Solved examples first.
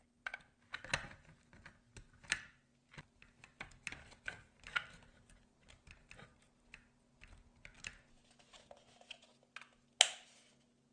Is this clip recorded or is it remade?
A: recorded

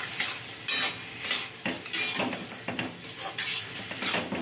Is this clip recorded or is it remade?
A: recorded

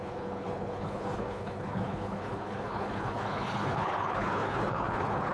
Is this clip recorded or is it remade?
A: remade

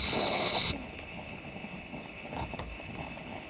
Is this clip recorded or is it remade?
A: remade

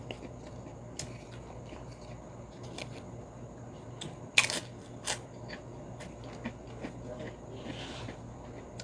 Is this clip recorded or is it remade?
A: recorded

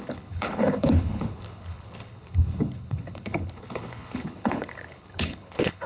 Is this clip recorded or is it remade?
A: remade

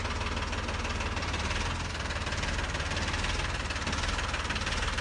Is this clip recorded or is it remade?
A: recorded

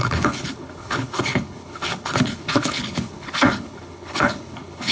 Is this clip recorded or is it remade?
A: remade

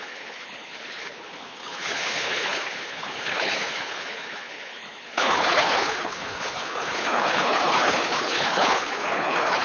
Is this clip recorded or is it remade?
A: remade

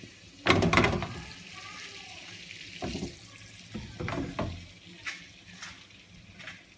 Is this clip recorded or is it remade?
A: recorded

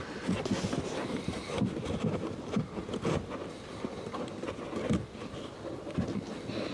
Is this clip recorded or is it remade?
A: recorded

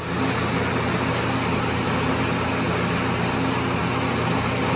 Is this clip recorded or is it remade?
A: recorded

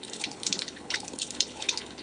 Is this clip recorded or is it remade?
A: remade